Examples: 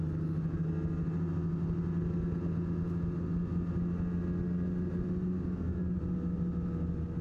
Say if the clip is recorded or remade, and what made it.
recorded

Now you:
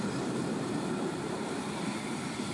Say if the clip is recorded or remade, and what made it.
remade, vocoder, BigVGAN v2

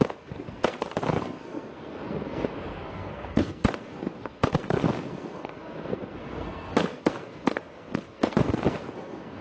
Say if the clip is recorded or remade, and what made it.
remade, codec, SNAC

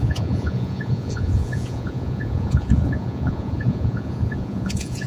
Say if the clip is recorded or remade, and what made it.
remade, vocoder, Vocos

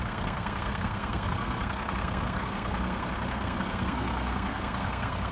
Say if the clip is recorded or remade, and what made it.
remade, codec, SNAC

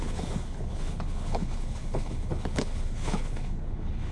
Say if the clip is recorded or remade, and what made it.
remade, codec, HILCodec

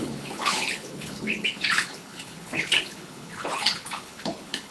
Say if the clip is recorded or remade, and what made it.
remade, codec, HILCodec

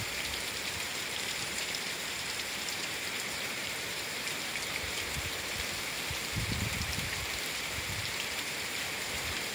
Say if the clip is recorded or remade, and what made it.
remade, vocoder, BigVGAN v2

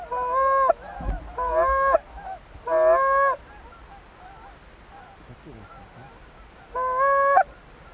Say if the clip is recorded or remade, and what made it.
recorded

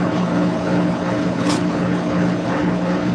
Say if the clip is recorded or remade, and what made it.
remade, codec, HILCodec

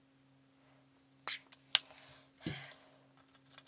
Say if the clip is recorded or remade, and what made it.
recorded